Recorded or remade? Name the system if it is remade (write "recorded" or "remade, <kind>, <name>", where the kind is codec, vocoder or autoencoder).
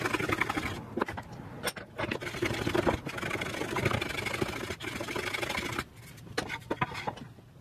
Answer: recorded